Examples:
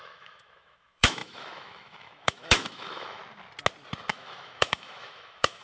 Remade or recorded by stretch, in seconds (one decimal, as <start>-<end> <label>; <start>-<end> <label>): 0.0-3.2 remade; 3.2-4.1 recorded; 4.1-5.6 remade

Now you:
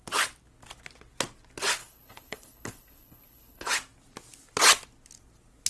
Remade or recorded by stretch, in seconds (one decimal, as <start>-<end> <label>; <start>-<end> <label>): 0.0-1.8 recorded; 1.8-3.7 remade; 3.7-5.7 recorded

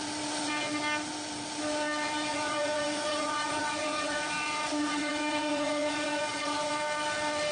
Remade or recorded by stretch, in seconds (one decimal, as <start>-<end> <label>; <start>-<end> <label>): 0.0-2.3 recorded; 2.3-6.7 remade; 6.7-7.5 recorded

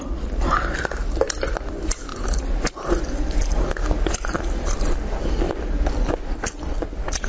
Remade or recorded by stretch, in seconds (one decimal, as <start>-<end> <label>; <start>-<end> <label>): 0.0-7.3 recorded